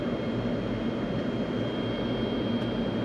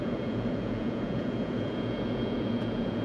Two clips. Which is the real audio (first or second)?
first